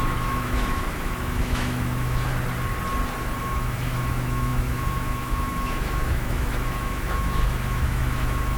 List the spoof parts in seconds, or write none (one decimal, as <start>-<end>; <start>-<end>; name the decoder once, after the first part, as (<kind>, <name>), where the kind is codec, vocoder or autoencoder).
0.0-2.3 (autoencoder, DAC-VAE); 3.4-8.6